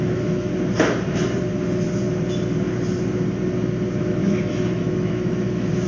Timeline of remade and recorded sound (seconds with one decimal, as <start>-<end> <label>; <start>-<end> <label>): 0.0-0.5 remade; 0.5-4.0 recorded; 4.0-5.9 remade